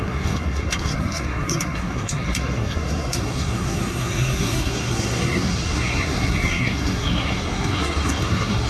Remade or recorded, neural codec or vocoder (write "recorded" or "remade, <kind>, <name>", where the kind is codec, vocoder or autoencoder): remade, codec, SNAC